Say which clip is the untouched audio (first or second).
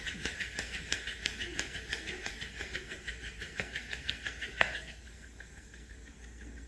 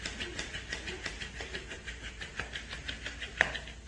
second